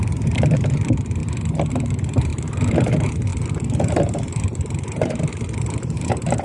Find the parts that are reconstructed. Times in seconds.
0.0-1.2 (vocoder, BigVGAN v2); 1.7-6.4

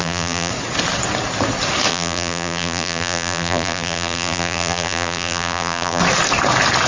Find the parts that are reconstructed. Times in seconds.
0.0-0.5 (vocoder, BigVGAN v2); 1.9-6.0